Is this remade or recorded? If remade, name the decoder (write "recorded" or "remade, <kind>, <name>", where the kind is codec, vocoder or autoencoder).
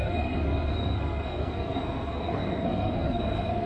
remade, codec, SNAC